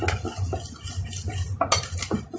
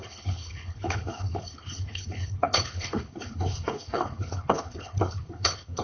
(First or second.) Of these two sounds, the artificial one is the second